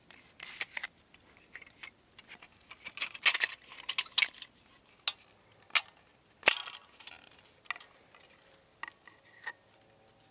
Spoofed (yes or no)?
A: no